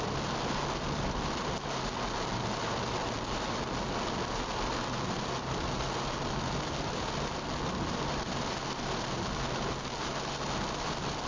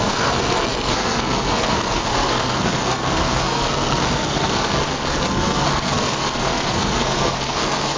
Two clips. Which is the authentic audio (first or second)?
first